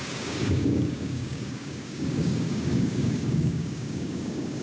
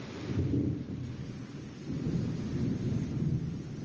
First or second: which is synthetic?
first